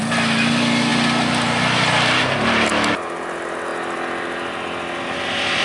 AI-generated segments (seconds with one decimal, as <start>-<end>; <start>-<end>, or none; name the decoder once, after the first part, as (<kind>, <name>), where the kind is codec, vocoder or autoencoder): none